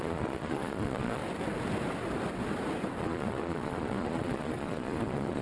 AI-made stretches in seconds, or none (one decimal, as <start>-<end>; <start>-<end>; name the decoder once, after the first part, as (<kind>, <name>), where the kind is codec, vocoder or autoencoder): 0.0-1.2 (vocoder, Vocos); 3.0-5.4